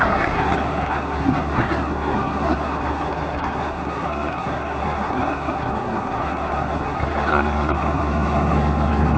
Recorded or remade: remade